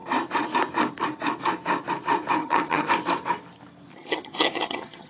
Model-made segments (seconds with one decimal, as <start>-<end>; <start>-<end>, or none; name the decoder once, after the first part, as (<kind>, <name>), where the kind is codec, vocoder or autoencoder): 2.4-2.9 (vocoder, HiFi-GAN); 3.9-5.1

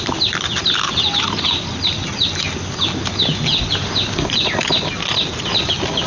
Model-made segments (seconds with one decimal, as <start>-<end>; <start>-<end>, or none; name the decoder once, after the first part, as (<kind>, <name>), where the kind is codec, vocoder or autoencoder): none